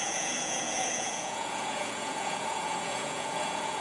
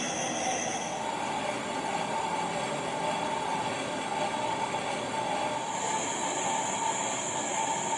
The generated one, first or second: first